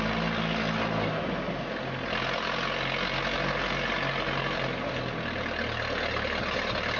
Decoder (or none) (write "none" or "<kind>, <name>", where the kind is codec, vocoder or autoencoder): none